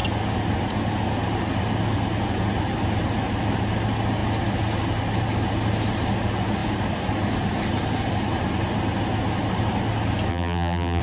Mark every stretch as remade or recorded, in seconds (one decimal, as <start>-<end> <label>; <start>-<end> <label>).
0.0-10.3 recorded; 10.3-11.0 remade